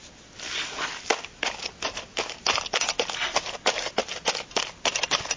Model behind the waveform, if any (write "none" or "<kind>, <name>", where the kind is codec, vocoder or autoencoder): none